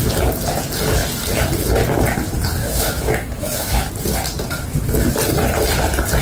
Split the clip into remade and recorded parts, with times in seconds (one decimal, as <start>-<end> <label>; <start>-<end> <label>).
0.0-2.6 recorded; 2.6-3.9 remade; 3.9-6.2 recorded